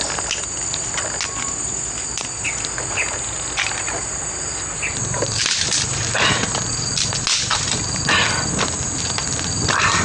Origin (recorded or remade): recorded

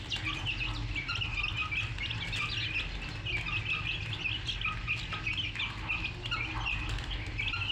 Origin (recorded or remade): recorded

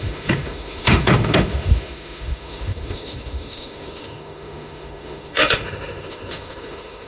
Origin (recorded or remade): remade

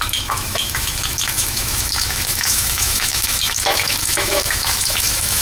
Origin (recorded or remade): remade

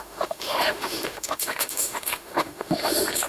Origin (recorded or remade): remade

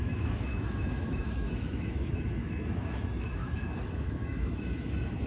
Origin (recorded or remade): remade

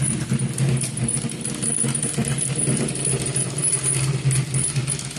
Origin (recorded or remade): recorded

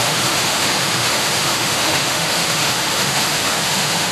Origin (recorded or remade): remade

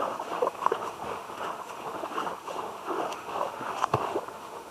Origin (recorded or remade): remade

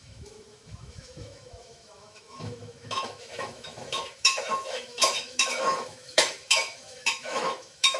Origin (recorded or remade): remade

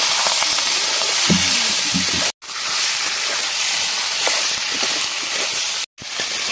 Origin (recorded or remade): recorded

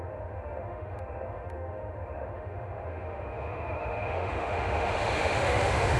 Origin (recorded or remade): remade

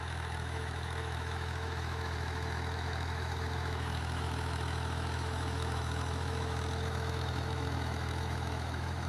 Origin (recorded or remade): remade